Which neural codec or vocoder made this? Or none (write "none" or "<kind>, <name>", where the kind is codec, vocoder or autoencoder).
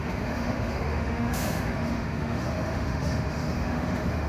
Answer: autoencoder, DAC-VAE